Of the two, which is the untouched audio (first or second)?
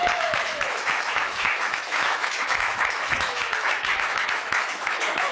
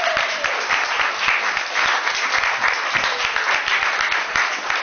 second